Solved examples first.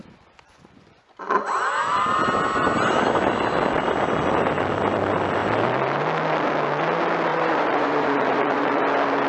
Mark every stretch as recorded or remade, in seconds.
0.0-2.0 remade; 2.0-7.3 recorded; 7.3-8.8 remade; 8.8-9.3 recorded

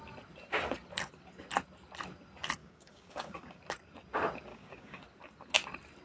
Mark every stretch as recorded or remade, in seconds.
0.0-2.6 recorded; 2.6-3.6 remade; 3.6-4.5 recorded; 4.5-5.0 remade; 5.0-6.0 recorded

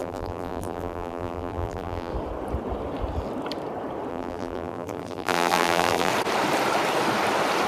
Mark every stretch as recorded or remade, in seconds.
0.0-2.1 remade; 2.1-4.1 recorded; 4.1-6.1 remade; 6.1-7.7 recorded

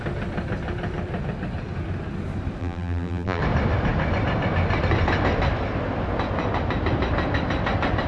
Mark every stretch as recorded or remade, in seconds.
0.0-2.6 recorded; 2.6-3.4 remade; 3.4-8.1 recorded

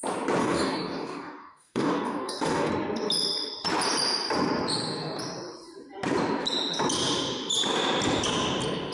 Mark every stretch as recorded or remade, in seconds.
0.0-0.4 recorded; 0.4-2.7 remade; 2.7-8.9 recorded

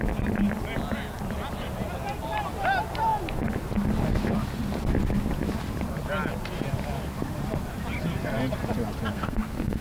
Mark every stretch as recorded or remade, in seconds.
0.0-9.1 recorded; 9.1-9.8 remade